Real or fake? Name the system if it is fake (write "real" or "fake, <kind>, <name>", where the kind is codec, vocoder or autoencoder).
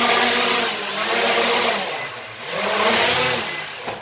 real